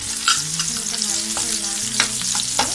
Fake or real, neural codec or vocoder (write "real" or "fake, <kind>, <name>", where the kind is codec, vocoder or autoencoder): real